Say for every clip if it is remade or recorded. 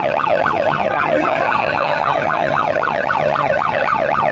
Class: remade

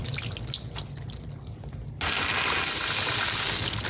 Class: recorded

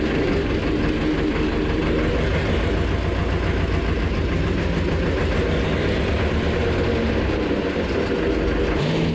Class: recorded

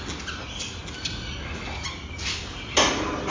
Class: recorded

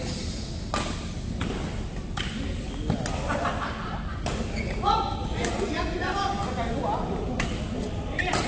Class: recorded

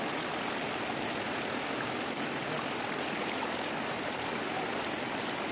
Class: recorded